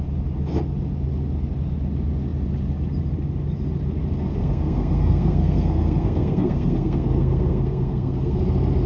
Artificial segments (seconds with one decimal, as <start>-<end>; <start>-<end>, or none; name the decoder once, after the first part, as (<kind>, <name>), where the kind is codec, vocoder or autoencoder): 4.3-8.4 (codec, SNAC)